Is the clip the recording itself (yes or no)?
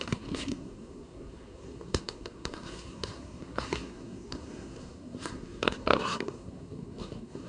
no